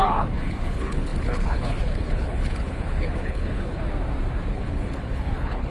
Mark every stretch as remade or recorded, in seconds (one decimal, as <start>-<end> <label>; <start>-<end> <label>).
0.0-3.8 remade; 3.8-4.5 recorded; 4.5-5.7 remade